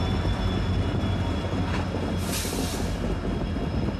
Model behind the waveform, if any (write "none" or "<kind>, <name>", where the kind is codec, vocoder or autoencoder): none